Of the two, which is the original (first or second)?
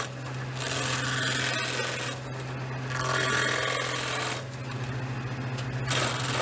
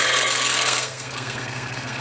first